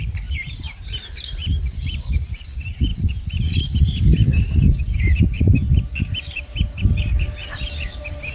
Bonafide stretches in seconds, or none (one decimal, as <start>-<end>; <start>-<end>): none